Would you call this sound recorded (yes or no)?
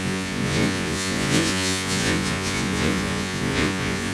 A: no